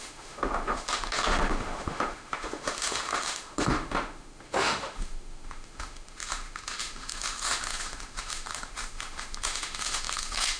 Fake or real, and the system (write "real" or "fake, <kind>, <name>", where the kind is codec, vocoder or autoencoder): fake, autoencoder, DAC-VAE